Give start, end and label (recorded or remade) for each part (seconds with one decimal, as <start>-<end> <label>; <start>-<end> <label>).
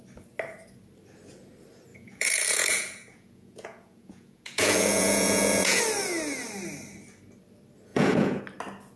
0.0-1.9 recorded; 1.9-5.8 remade; 5.8-7.9 recorded; 7.9-8.4 remade; 8.4-9.0 recorded